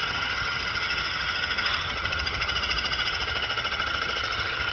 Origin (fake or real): fake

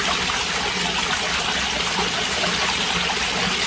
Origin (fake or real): real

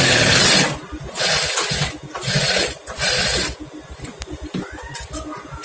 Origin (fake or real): real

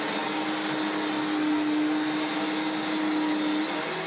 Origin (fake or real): real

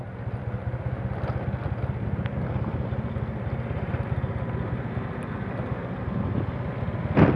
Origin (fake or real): real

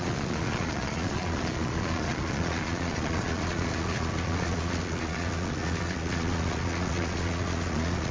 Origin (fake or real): fake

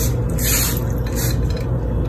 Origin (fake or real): real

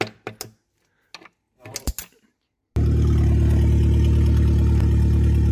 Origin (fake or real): real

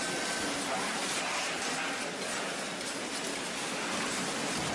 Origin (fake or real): real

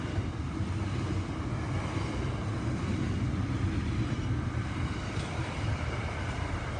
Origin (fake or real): real